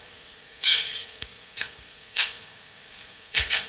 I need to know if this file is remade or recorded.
remade